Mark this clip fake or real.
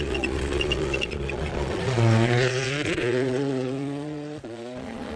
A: fake